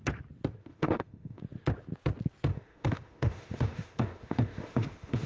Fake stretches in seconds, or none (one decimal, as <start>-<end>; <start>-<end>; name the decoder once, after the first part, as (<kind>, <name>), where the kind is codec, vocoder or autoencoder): 0.6-1.4 (autoencoder, DAC-VAE); 2.5-5.3